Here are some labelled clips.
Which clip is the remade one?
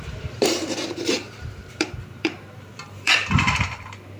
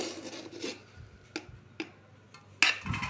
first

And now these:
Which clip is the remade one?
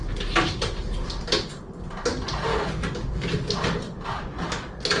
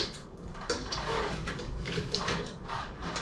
second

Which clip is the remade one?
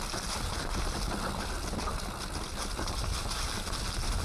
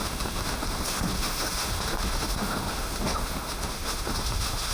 second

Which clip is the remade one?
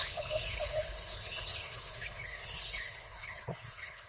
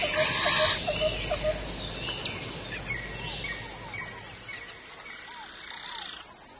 first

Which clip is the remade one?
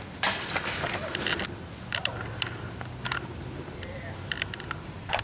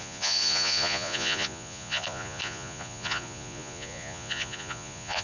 second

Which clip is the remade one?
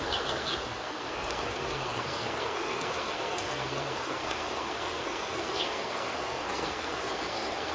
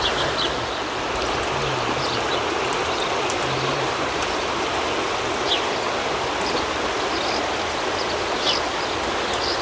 first